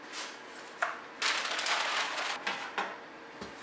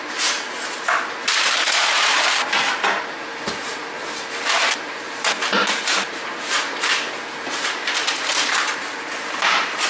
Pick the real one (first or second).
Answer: first